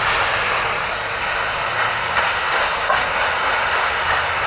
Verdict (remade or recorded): recorded